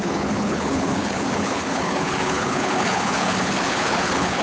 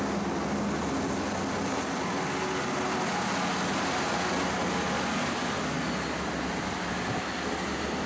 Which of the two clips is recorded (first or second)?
second